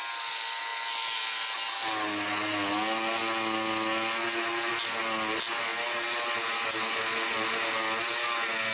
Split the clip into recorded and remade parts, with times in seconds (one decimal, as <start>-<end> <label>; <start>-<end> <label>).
0.0-8.7 recorded